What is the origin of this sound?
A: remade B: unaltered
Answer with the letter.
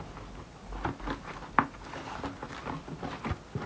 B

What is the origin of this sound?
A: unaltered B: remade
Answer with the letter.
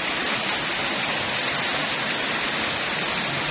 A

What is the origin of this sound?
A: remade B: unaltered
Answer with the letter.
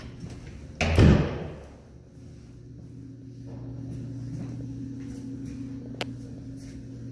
B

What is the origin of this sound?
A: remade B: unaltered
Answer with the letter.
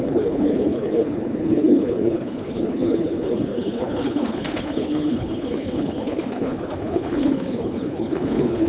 A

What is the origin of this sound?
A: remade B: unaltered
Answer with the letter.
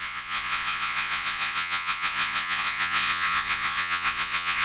A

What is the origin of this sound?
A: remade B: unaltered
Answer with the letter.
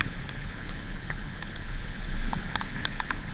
A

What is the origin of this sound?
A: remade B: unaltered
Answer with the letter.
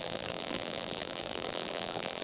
A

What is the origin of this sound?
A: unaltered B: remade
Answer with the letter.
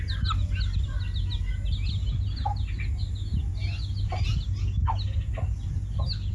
A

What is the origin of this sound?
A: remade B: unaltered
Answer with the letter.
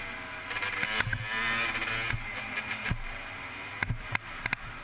B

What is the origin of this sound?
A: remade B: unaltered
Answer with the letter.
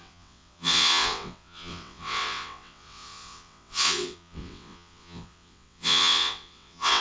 A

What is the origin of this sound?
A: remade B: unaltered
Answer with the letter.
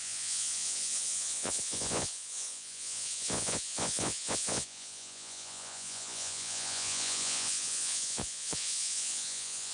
A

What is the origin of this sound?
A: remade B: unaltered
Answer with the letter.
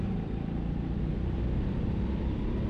B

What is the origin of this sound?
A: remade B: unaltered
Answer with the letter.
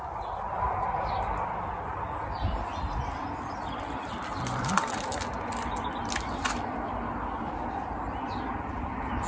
B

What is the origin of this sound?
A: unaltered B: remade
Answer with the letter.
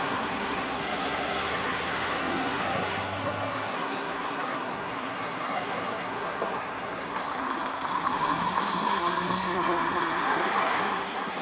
B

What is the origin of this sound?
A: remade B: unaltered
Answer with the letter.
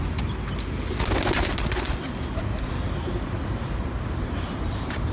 B